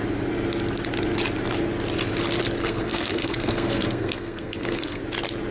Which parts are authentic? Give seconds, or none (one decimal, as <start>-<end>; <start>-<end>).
0.0-2.6; 5.0-5.5

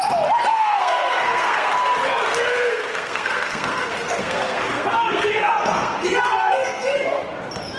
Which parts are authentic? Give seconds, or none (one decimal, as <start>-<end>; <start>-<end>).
0.0-0.5; 1.7-2.7; 7.2-7.8

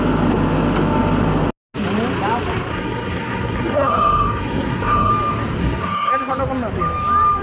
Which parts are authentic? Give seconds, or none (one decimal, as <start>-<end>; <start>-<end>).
0.0-2.7; 5.1-5.6; 6.1-7.4